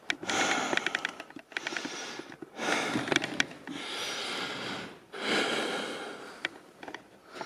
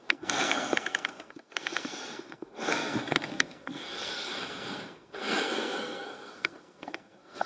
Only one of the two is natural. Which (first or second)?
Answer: first